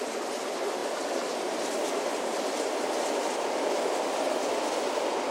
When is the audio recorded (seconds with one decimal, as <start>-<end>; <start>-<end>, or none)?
0.0-5.3

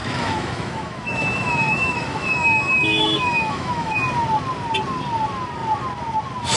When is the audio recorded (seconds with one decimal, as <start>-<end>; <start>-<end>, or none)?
4.0-6.6

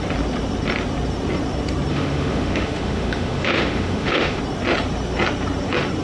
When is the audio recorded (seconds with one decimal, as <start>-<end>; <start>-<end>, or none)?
0.0-1.9; 4.4-6.0

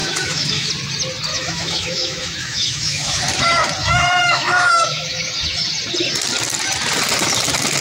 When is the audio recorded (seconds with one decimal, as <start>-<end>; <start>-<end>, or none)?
0.7-1.3; 3.2-3.8; 5.2-7.8

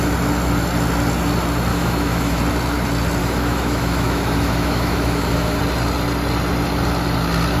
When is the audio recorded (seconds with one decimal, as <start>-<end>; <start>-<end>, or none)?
0.0-1.7; 2.4-3.2; 5.6-7.6

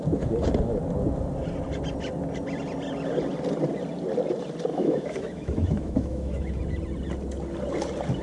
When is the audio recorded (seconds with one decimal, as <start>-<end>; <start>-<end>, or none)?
0.0-4.7; 6.6-8.2